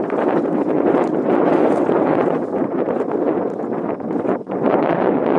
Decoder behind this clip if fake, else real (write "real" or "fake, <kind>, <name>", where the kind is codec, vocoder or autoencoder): fake, vocoder, WaveNeXt